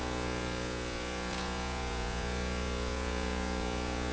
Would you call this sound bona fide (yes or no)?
no